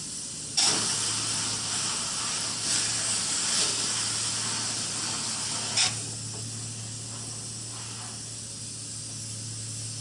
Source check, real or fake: real